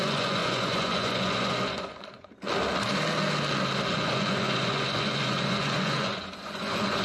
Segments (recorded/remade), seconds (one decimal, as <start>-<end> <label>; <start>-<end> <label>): 0.0-2.3 remade; 2.3-3.9 recorded; 3.9-7.0 remade